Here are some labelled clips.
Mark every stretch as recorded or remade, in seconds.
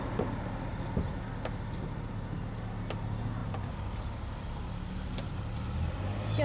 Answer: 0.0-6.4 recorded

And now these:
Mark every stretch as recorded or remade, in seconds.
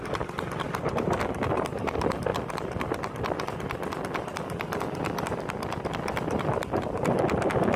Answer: 0.0-7.8 recorded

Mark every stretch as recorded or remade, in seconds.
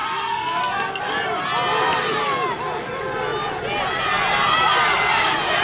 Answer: 0.0-1.0 remade; 1.0-5.6 recorded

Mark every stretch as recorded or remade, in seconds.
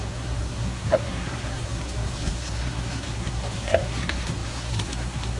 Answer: 0.0-5.4 remade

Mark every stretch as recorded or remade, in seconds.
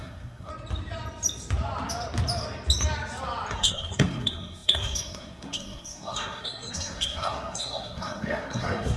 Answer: 0.0-0.5 remade; 0.5-3.5 recorded; 3.5-9.0 remade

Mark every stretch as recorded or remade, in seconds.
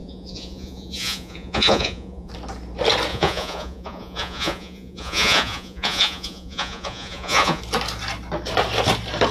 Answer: 0.0-2.3 remade; 2.3-3.1 recorded; 3.1-7.6 remade; 7.6-9.3 recorded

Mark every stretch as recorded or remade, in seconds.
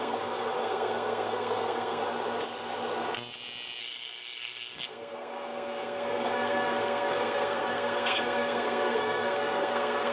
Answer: 0.0-2.0 remade; 2.0-3.8 recorded; 3.8-10.1 remade